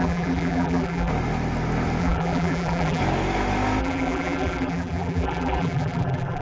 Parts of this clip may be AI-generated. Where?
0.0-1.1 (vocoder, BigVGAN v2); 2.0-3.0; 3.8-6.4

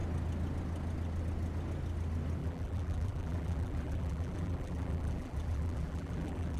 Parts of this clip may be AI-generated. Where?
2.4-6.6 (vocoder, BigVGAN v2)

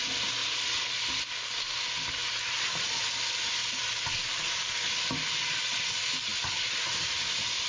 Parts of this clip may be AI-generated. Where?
none